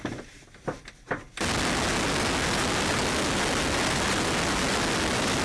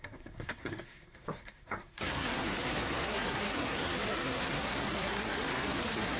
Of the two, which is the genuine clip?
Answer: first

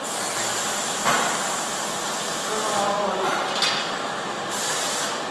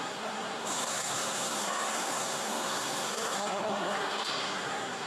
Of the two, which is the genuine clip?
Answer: first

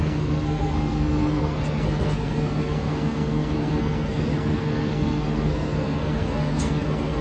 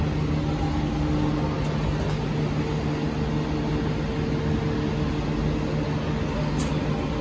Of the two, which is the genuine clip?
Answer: second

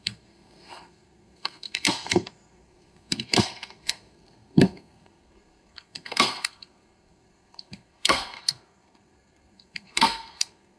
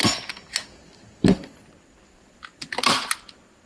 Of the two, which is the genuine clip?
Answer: second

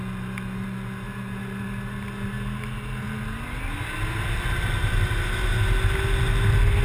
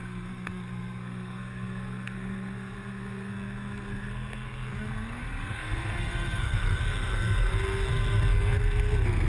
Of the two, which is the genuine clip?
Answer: first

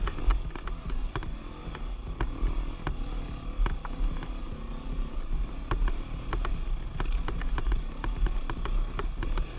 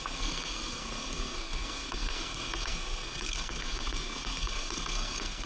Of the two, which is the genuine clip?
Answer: first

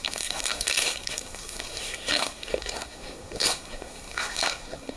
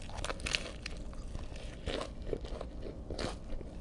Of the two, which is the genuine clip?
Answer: second